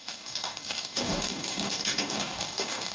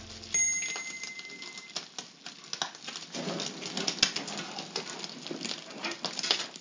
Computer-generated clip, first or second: first